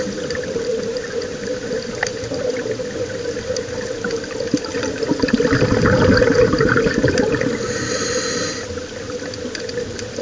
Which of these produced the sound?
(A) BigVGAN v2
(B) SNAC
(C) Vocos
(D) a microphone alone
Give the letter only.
D